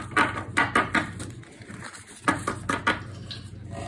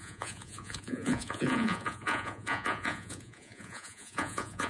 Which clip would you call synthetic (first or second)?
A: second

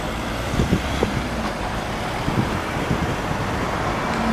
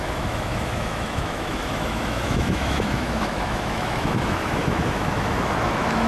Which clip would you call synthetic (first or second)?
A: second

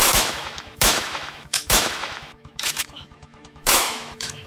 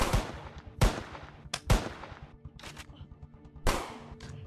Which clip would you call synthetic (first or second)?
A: first